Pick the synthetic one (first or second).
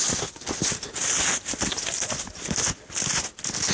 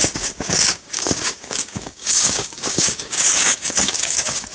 second